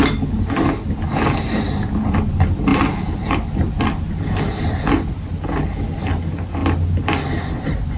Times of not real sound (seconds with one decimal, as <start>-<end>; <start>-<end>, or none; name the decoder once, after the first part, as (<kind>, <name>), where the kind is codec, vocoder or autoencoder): none